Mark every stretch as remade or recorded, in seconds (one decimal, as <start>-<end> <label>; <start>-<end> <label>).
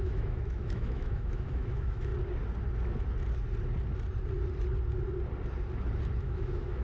0.0-2.1 remade; 2.1-6.2 recorded; 6.2-6.8 remade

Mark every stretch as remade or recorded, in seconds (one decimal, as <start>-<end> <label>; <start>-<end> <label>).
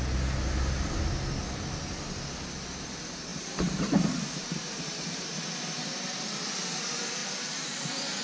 0.0-3.3 recorded; 3.3-5.3 remade; 5.3-8.2 recorded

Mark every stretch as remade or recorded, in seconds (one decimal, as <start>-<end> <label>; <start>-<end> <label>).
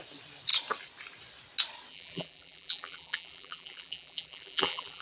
0.0-1.9 recorded; 1.9-5.0 remade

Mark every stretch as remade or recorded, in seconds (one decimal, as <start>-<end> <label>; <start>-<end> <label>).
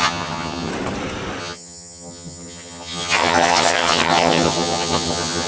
0.0-0.7 remade; 0.7-1.4 recorded; 1.4-5.5 remade